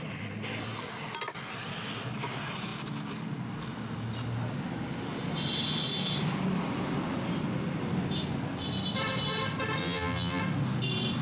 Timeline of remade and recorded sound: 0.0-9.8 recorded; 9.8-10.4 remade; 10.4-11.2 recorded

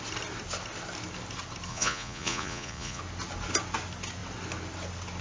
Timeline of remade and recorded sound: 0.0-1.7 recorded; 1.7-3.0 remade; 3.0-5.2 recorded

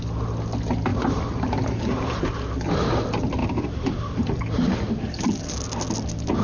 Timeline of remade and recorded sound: 0.0-0.9 recorded; 0.9-2.2 remade; 2.2-3.4 recorded; 3.4-4.4 remade; 4.4-6.4 recorded

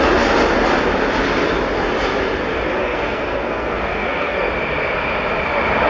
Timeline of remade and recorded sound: 0.0-2.8 recorded; 2.8-4.5 remade; 4.5-5.9 recorded

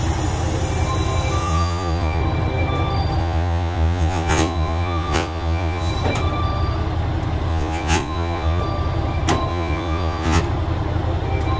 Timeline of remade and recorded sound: 0.0-1.4 recorded; 1.4-2.2 remade; 2.2-3.2 recorded; 3.2-5.9 remade; 5.9-7.5 recorded; 7.5-8.6 remade; 8.6-9.5 recorded; 9.5-10.4 remade; 10.4-11.6 recorded